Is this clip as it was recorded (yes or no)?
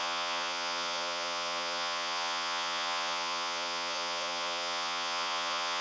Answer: no